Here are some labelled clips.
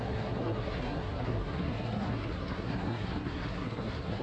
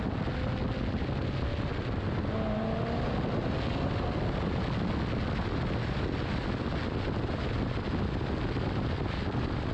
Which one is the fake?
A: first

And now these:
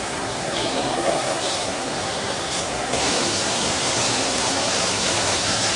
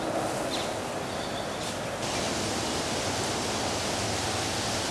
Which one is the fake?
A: first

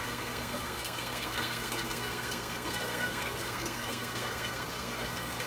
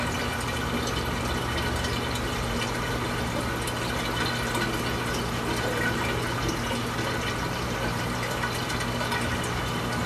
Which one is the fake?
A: first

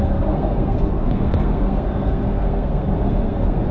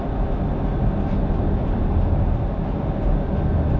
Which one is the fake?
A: first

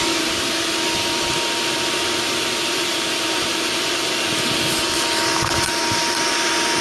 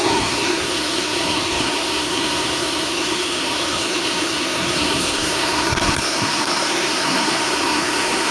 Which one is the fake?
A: second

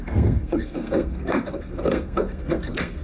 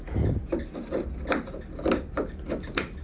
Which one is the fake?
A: first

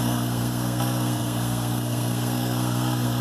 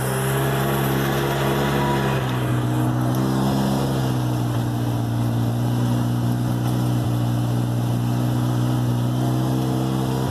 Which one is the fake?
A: first